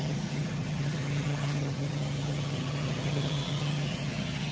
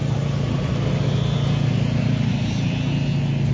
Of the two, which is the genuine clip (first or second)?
second